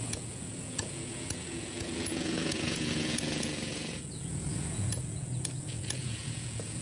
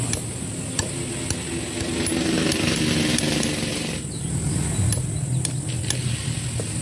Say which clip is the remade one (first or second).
first